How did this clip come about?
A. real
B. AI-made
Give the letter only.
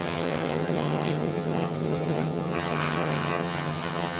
B